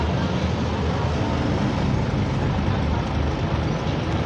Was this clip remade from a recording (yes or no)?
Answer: no